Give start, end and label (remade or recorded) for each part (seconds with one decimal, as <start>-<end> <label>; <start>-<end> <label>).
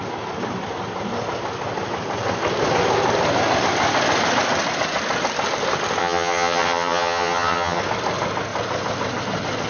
0.0-6.0 recorded; 6.0-7.8 remade; 7.8-9.7 recorded